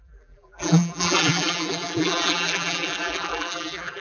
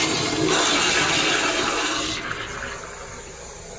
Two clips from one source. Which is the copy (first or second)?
first